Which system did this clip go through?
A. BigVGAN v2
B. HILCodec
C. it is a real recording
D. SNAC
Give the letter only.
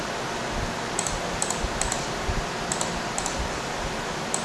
C